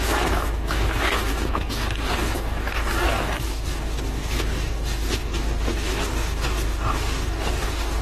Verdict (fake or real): fake